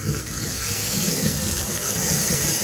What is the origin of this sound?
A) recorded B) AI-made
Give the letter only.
B